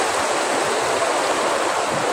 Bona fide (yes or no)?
yes